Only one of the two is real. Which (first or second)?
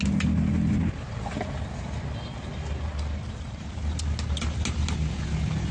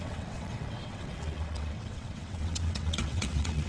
first